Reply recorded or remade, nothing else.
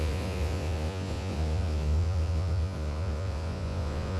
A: remade